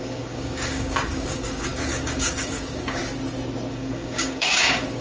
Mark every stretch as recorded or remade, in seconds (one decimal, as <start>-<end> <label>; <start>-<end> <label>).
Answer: 0.0-3.0 remade; 3.0-3.7 recorded; 3.7-5.0 remade